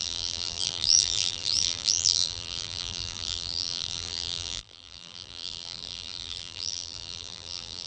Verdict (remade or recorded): remade